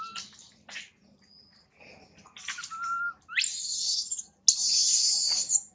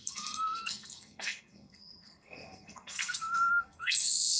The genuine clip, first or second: first